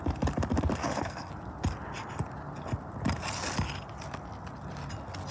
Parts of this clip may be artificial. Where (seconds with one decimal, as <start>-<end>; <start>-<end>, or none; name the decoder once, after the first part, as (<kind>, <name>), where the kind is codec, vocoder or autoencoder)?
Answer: 0.8-1.3 (codec, SNAC)